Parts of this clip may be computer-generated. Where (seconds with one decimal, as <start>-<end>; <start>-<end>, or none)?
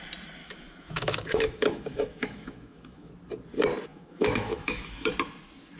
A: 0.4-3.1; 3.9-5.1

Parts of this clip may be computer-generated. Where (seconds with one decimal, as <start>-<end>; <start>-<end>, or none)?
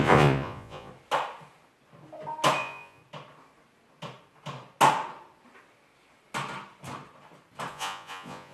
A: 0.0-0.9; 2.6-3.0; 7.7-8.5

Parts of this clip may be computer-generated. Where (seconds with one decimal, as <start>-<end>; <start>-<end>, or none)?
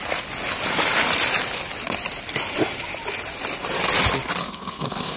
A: 4.4-5.2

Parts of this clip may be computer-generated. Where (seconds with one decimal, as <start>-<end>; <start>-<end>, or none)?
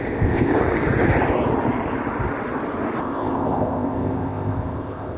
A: 0.0-0.5; 3.0-5.2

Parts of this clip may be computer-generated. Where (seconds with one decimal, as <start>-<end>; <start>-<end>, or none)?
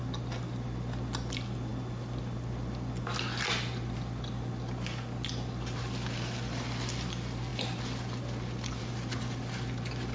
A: none